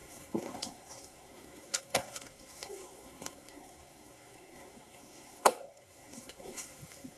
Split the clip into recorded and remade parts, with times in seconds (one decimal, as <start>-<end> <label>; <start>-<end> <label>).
0.0-7.2 remade